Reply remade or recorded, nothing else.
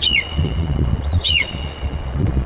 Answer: remade